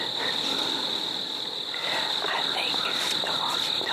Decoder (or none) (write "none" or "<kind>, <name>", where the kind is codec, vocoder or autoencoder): none